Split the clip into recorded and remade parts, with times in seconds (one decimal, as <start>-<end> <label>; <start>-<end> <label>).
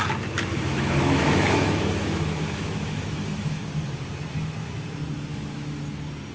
0.0-0.5 recorded; 0.5-3.6 remade; 3.6-5.3 recorded; 5.3-5.8 remade; 5.8-6.3 recorded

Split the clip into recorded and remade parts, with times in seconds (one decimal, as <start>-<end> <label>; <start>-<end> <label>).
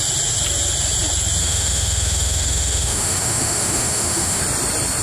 0.0-1.4 recorded; 1.4-4.4 remade; 4.4-5.0 recorded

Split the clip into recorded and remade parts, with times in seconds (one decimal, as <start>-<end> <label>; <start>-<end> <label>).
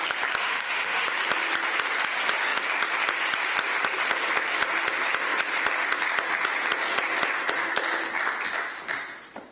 0.0-0.4 recorded; 0.4-1.1 remade; 1.1-9.5 recorded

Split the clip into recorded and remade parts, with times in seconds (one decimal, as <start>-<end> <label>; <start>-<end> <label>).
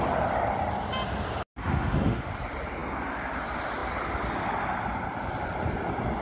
0.0-1.6 recorded; 1.6-2.3 remade; 2.3-6.2 recorded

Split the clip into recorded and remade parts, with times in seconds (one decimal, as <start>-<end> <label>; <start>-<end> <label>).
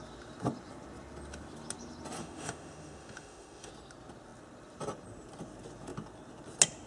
0.0-2.2 recorded; 2.2-3.7 remade; 3.7-6.9 recorded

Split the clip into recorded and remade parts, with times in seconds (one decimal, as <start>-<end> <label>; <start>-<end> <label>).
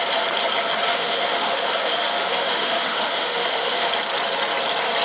0.0-0.9 recorded; 0.9-3.9 remade; 3.9-5.0 recorded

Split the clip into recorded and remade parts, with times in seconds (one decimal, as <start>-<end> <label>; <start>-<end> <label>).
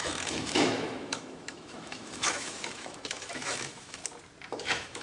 0.0-4.0 remade; 4.0-4.5 recorded; 4.5-5.0 remade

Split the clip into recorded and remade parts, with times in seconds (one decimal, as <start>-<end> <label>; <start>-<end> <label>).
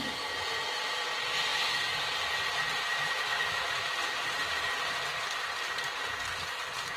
0.0-2.9 recorded; 2.9-3.7 remade; 3.7-7.0 recorded